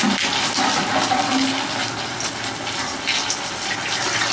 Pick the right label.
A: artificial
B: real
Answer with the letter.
B